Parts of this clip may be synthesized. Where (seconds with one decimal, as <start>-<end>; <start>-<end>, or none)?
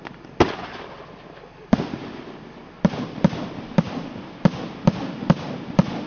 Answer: 2.6-4.1